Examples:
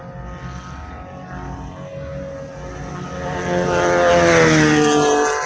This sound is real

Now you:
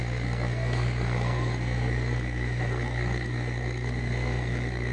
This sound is fake